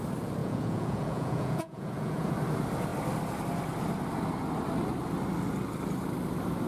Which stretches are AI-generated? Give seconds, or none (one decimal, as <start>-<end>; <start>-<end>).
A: 0.4-2.3